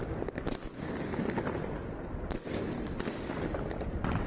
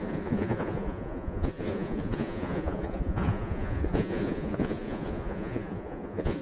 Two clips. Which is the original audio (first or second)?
first